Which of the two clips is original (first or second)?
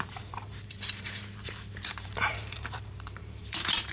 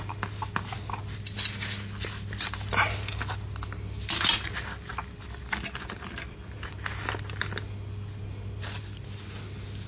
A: second